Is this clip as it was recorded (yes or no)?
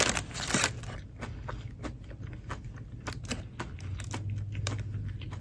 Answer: yes